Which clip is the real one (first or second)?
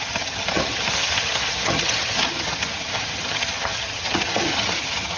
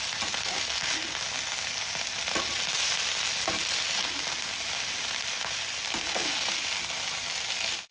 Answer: second